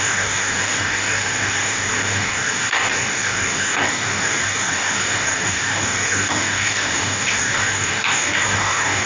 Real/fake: fake